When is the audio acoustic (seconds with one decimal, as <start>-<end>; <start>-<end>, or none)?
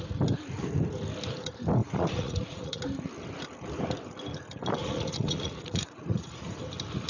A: 0.0-1.8; 2.8-4.8; 6.6-7.1